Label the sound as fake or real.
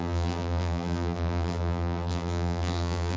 fake